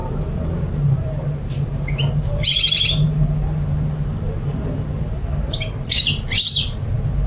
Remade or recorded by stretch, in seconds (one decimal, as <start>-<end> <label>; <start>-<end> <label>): 0.0-5.2 remade; 5.2-5.9 recorded; 5.9-7.3 remade